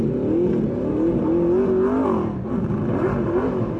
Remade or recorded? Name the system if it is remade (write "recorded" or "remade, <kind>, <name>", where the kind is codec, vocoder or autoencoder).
recorded